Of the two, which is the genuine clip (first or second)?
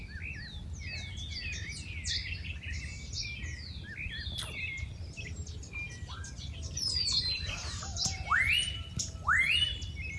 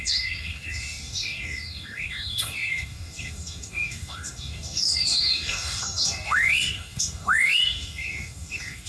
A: first